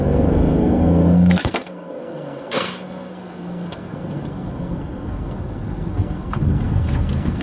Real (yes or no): no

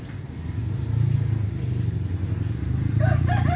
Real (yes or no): yes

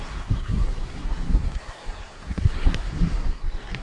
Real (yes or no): no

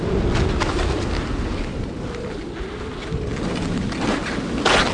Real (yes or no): yes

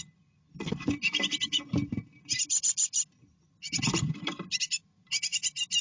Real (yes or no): yes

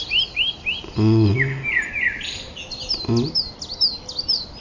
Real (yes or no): yes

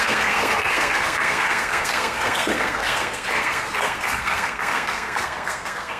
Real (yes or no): no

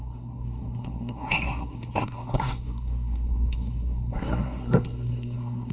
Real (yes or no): no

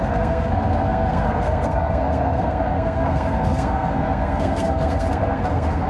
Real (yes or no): no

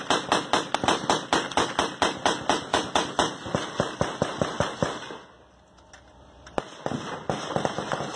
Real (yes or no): yes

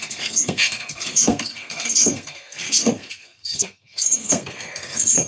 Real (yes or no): no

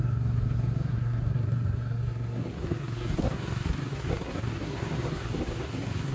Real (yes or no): no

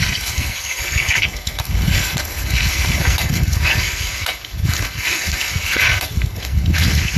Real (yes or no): no